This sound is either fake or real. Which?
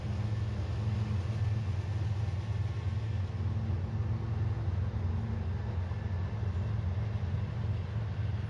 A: real